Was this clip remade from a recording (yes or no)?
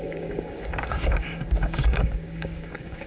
yes